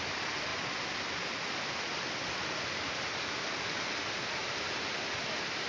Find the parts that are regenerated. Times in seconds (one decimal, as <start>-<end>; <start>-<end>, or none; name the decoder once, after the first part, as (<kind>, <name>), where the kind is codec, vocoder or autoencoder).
none